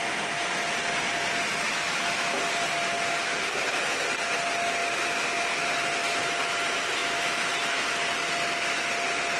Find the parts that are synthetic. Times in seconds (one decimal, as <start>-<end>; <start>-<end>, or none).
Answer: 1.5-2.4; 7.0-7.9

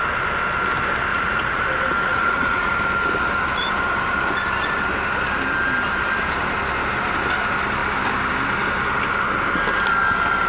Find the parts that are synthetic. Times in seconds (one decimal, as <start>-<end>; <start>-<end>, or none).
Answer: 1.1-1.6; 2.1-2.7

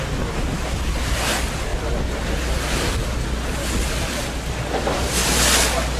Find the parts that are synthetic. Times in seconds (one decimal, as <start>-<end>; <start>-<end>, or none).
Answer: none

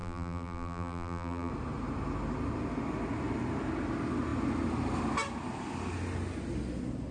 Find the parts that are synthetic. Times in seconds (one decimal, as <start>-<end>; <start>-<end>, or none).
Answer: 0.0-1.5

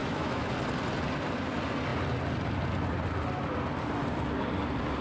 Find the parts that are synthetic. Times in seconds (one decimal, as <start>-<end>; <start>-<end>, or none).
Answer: 0.0-0.5

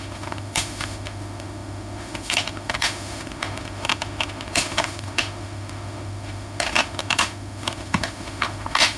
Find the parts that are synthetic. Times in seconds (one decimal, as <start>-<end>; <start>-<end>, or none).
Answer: 0.0-9.0